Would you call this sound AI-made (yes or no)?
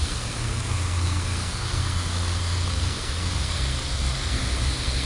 yes